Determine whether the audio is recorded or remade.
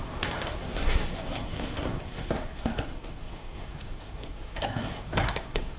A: remade